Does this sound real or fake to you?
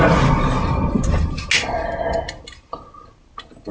real